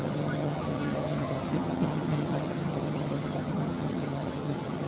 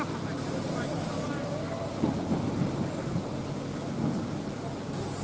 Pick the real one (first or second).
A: second